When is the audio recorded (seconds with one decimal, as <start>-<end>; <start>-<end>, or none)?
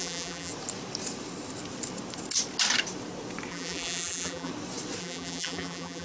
0.5-3.5; 4.5-5.0